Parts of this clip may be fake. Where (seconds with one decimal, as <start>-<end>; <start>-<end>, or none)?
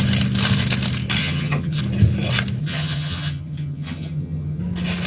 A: 1.2-1.8; 2.6-4.6